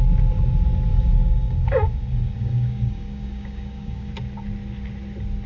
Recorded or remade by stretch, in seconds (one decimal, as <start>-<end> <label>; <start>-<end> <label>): 0.0-0.9 recorded; 0.9-4.1 remade; 4.1-5.5 recorded